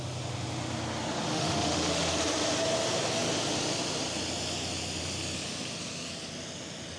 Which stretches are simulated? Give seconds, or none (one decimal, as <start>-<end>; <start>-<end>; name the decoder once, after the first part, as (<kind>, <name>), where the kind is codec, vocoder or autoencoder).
1.3-2.1 (autoencoder, DAC-VAE)